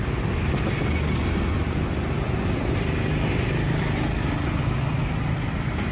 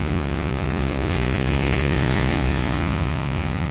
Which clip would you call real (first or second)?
first